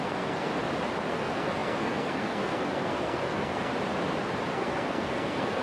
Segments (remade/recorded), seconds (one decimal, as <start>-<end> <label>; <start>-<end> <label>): 0.0-0.5 remade; 0.5-1.1 recorded; 1.1-3.7 remade; 3.7-4.5 recorded; 4.5-5.6 remade